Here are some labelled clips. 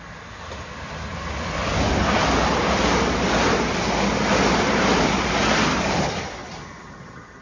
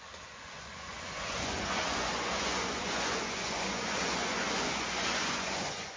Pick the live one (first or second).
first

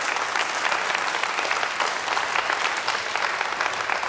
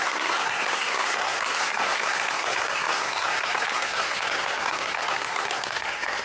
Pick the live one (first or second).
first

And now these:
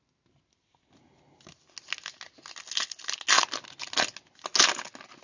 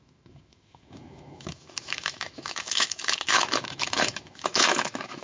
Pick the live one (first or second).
first